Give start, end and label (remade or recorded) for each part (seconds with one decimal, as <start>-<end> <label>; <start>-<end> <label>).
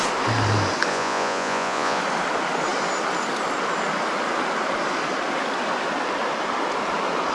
0.0-0.9 recorded; 0.9-2.0 remade; 2.0-7.3 recorded